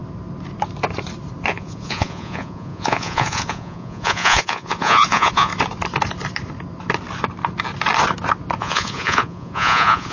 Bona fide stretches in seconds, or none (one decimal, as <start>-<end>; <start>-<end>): 0.0-1.5; 5.5-8.6